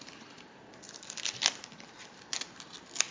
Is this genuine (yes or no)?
yes